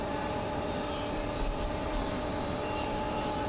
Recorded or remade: remade